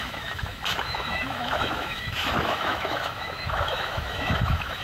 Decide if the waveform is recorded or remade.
remade